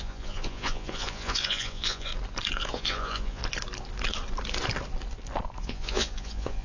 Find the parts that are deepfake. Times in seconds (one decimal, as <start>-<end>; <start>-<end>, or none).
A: 0.0-2.1; 2.7-3.4; 5.6-6.6